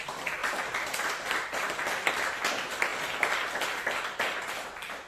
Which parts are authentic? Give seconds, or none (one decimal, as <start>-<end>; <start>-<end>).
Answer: 0.0-5.1